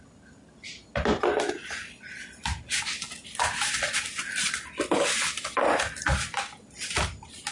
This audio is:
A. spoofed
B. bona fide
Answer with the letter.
B